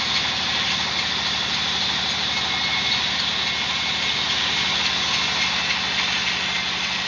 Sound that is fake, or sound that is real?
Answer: real